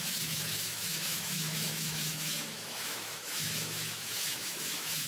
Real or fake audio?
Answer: fake